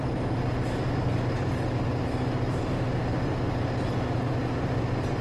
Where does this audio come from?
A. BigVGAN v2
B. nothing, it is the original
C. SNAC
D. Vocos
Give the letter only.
B